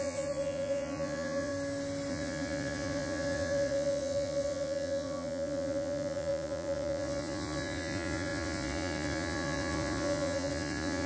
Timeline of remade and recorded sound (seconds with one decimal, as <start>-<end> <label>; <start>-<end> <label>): 0.0-1.5 remade; 1.5-2.1 recorded; 2.1-11.1 remade